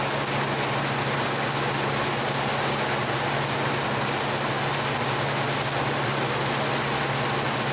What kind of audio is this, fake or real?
real